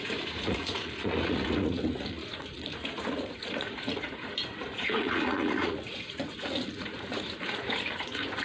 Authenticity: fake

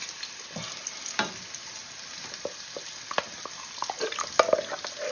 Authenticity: real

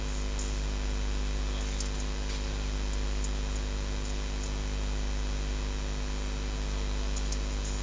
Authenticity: real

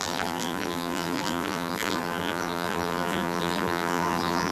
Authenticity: fake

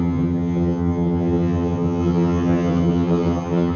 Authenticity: fake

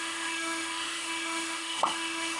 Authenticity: fake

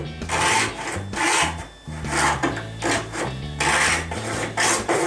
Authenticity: real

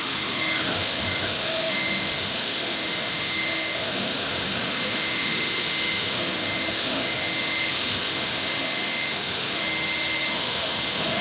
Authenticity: fake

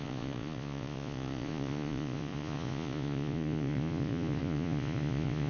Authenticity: fake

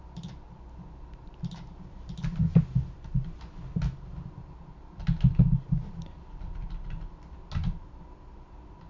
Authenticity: real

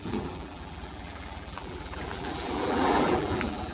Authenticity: fake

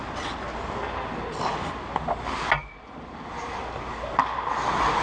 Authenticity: real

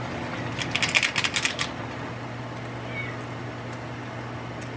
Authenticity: real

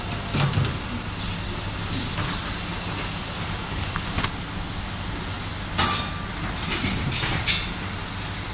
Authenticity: real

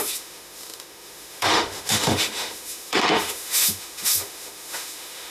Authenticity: fake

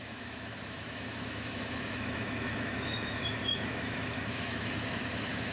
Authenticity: fake